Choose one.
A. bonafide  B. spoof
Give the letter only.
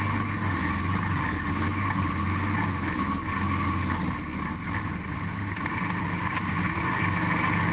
A